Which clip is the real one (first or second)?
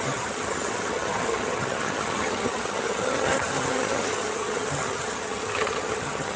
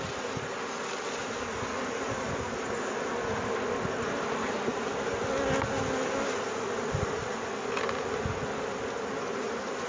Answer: second